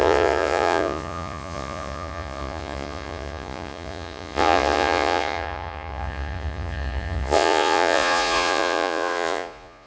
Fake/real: fake